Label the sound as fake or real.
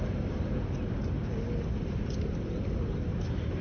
real